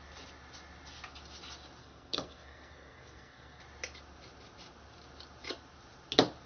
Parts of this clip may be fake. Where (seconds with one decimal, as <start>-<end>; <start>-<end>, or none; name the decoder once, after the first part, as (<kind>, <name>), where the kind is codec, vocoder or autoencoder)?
1.8-3.6 (codec, SNAC)